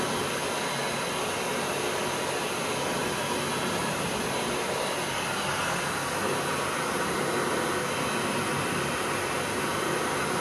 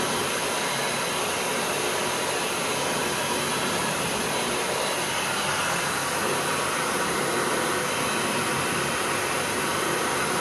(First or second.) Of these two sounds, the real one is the first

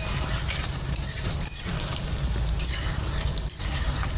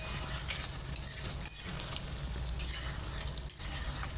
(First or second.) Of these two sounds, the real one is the second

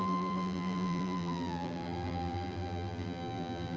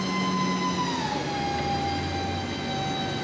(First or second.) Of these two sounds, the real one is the second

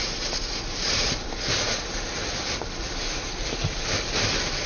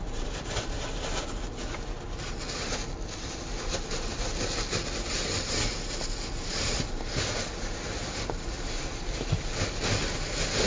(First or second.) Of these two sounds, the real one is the second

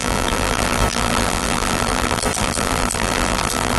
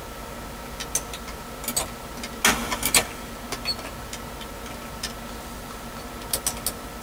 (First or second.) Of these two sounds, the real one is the second